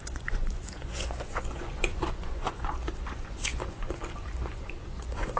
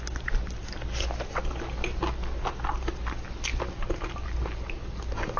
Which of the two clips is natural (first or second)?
second